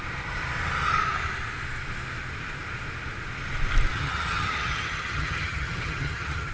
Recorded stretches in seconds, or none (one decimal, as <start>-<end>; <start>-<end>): 0.0-3.9